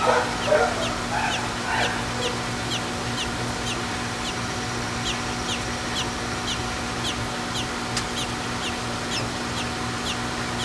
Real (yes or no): yes